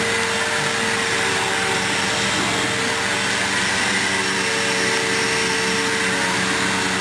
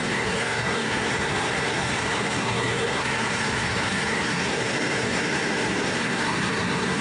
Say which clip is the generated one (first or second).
second